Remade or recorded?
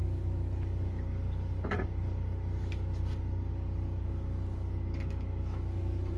remade